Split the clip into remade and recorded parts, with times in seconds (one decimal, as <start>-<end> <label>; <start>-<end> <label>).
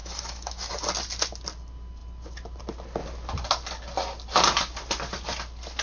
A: 0.0-0.7 remade; 0.7-5.8 recorded